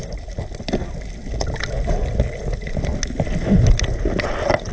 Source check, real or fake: real